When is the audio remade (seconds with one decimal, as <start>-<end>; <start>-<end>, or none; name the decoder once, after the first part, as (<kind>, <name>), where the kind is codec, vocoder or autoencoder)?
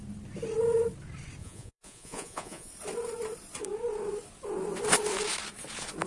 1.4-2.7 (vocoder, Vocos)